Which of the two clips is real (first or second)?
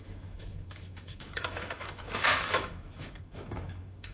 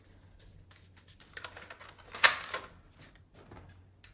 second